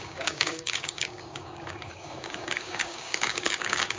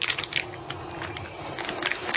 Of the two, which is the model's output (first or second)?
first